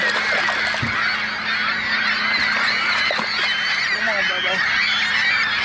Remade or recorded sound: recorded